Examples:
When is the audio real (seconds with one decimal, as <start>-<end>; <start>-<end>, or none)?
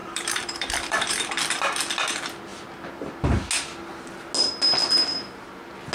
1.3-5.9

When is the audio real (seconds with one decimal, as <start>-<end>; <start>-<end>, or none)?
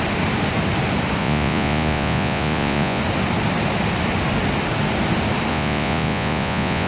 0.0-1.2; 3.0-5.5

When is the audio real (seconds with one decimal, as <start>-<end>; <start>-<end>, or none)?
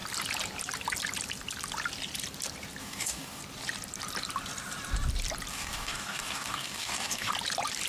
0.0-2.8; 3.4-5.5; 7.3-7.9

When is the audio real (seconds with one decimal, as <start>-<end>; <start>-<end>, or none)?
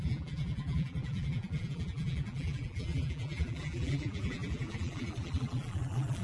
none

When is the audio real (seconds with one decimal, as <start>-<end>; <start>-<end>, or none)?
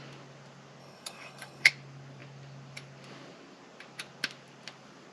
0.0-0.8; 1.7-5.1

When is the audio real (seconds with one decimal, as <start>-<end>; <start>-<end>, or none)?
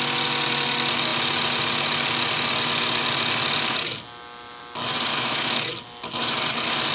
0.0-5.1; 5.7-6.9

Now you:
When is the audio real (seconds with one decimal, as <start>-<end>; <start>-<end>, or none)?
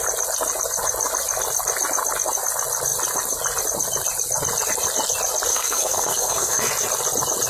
0.0-5.5; 6.7-7.5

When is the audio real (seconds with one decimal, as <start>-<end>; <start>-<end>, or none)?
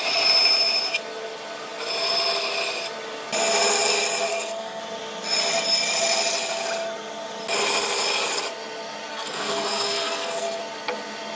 0.0-4.3; 4.8-9.1; 10.6-11.4